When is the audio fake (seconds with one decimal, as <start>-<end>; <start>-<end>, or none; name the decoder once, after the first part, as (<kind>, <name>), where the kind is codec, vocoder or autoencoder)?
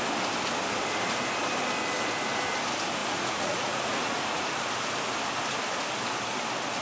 3.0-4.6 (vocoder, Vocos)